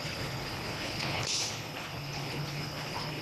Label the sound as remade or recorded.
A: remade